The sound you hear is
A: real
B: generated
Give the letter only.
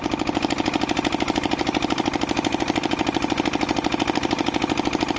B